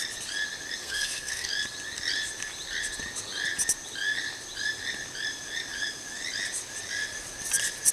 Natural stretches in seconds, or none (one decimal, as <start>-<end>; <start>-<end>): 0.0-0.8; 1.5-7.9